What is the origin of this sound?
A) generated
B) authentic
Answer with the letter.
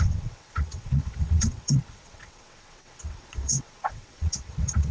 A